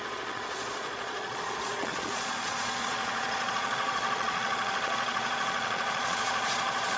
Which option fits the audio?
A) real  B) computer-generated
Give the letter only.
B